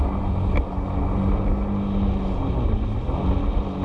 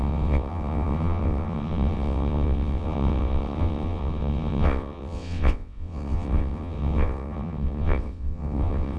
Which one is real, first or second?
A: first